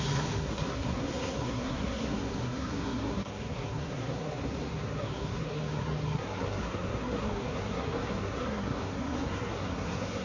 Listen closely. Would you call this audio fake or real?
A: fake